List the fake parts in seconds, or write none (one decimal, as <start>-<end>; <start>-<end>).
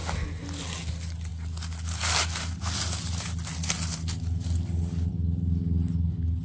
none